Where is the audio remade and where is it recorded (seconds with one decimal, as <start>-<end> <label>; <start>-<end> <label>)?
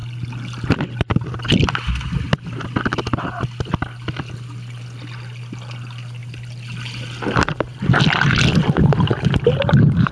0.0-10.1 recorded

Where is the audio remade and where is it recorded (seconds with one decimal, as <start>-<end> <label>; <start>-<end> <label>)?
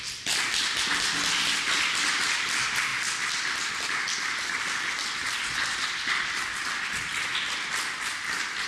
0.0-8.7 recorded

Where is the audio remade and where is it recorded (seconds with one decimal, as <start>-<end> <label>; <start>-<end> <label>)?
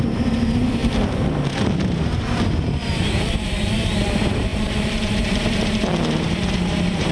0.0-7.1 remade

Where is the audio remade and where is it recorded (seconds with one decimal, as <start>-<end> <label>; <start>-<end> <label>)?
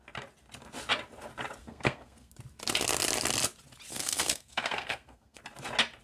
0.0-1.6 recorded; 1.6-2.3 remade; 2.3-3.9 recorded; 3.9-5.4 remade; 5.4-6.0 recorded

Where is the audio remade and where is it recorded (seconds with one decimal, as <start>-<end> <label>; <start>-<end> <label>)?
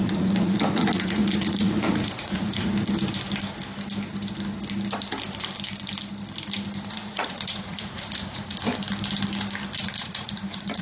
0.0-2.7 remade; 2.7-6.9 recorded; 6.9-8.7 remade; 8.7-9.8 recorded; 9.8-10.8 remade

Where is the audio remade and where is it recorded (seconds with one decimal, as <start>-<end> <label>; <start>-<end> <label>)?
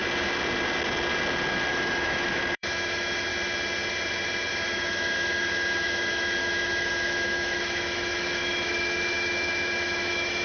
0.0-1.7 recorded; 1.7-3.3 remade; 3.3-4.5 recorded; 4.5-10.4 remade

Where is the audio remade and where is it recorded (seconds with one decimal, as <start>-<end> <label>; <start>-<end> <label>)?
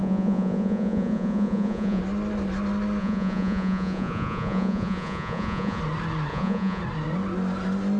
0.0-2.0 remade; 2.0-3.0 recorded; 3.0-5.8 remade; 5.8-6.3 recorded; 6.3-6.8 remade; 6.8-8.0 recorded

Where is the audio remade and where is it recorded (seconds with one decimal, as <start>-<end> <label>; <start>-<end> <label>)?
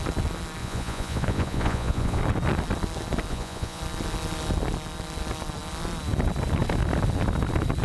0.0-0.6 recorded; 0.6-2.2 remade; 2.2-3.3 recorded; 3.3-3.8 remade; 3.8-7.8 recorded